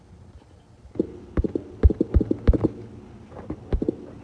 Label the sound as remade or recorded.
recorded